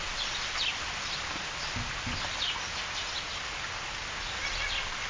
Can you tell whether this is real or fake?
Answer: real